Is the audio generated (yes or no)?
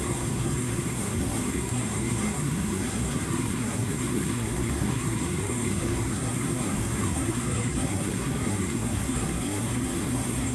yes